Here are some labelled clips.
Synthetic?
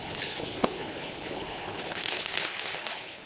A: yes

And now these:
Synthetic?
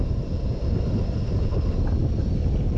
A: no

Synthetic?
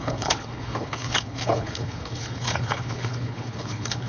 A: yes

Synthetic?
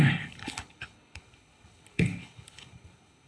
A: yes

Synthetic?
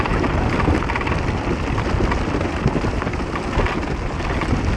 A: no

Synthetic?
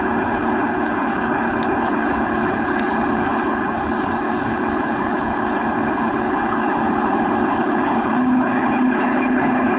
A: yes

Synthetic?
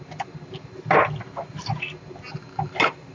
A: no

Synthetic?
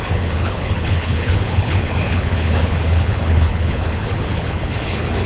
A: yes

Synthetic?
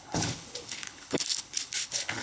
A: yes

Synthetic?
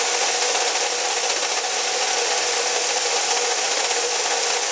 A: no